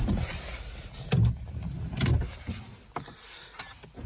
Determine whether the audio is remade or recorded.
recorded